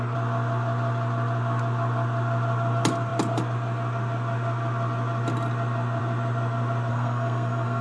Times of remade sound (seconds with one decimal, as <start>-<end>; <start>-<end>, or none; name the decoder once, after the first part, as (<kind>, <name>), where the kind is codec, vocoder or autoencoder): 6.9-7.8 (codec, SNAC)